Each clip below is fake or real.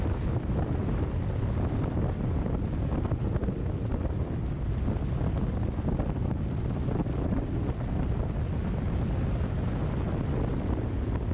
real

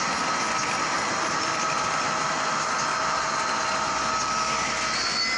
real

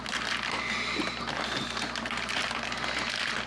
real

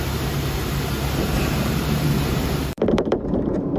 fake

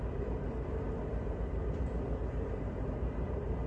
fake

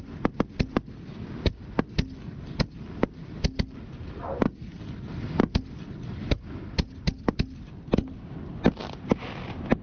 real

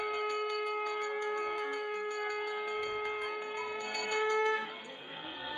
fake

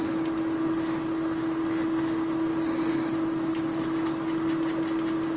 real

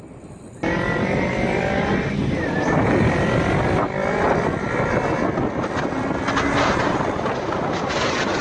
real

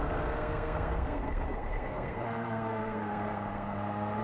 fake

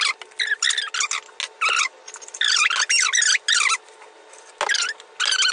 real